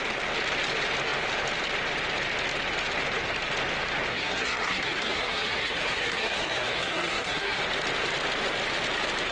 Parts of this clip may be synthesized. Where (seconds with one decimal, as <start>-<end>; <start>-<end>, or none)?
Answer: 4.1-7.6